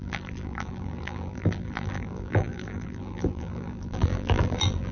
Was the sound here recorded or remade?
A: remade